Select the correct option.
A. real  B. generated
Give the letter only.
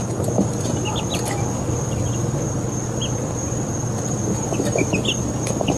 A